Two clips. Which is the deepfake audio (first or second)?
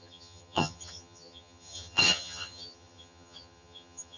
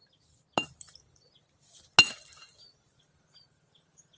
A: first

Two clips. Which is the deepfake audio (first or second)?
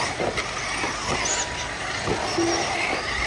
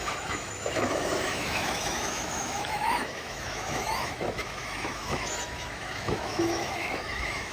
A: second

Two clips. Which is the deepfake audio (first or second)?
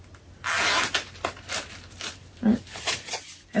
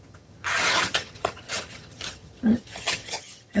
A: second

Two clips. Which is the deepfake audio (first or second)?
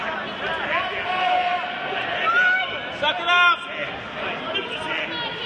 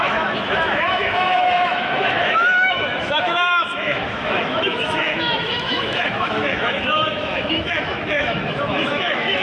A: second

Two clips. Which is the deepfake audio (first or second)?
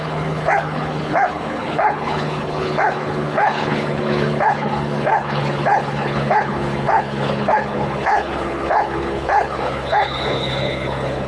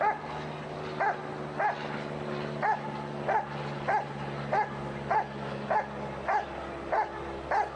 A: first